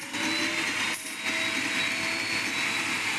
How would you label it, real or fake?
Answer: real